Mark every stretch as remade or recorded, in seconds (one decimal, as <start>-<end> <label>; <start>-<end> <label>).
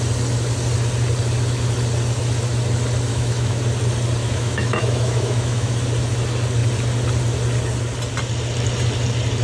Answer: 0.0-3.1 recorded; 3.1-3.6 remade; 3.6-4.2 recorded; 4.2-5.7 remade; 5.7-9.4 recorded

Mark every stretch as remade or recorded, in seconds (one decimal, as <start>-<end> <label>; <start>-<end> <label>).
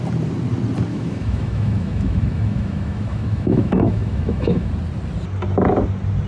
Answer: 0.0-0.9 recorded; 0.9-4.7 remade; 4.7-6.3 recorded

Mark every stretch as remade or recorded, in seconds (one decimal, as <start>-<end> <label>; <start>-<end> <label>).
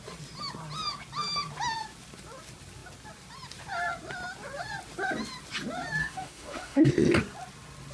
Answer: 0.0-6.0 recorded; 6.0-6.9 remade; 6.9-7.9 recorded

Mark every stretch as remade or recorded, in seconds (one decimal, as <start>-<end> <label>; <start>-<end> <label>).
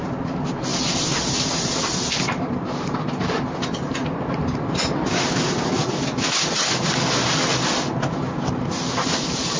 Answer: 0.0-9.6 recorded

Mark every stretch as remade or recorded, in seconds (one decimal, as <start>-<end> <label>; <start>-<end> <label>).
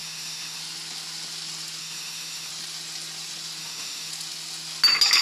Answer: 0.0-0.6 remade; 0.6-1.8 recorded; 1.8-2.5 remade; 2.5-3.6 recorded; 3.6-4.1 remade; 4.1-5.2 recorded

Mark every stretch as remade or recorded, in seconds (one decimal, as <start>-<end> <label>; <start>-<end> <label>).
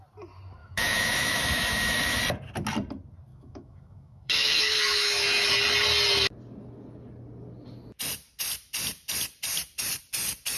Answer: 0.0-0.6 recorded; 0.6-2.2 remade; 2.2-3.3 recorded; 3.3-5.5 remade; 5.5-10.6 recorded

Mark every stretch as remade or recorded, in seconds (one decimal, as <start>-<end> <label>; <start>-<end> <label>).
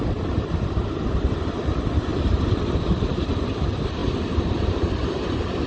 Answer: 0.0-5.7 recorded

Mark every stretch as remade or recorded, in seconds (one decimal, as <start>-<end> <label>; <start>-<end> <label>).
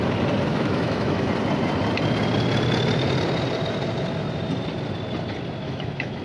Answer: 0.0-0.5 recorded; 0.5-1.3 remade; 1.3-5.6 recorded; 5.6-6.2 remade